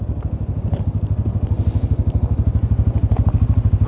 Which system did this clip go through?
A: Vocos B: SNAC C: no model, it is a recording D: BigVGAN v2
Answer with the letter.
C